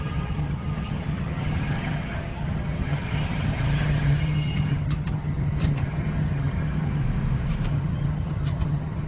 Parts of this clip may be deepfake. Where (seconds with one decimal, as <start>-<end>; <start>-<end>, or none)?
0.0-7.0; 7.7-9.1